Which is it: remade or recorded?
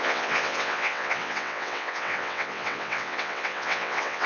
remade